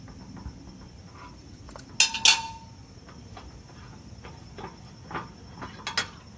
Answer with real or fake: real